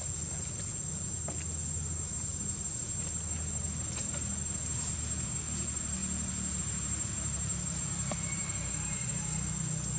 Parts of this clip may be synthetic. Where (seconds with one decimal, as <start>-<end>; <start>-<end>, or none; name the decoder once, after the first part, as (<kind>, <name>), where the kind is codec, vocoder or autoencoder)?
none